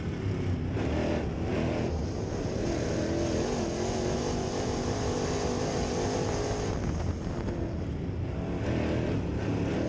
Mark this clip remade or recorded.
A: recorded